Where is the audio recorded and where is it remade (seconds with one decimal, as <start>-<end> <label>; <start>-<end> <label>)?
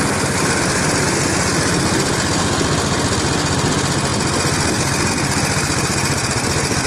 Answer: 0.0-6.9 recorded